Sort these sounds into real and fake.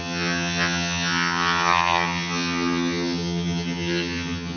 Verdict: fake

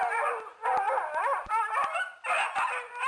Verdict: real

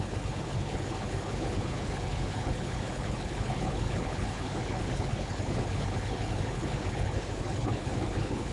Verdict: fake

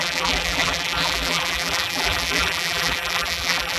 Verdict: fake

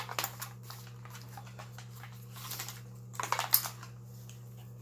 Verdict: real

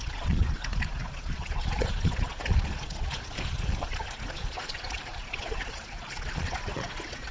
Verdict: fake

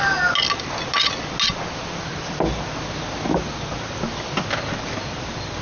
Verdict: real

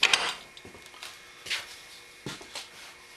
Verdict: real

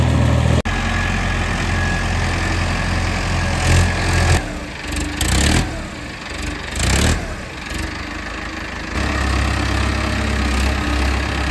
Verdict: real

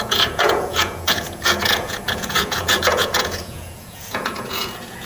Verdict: fake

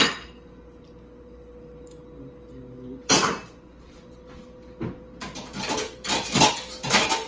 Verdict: real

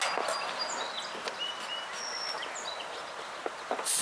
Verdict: real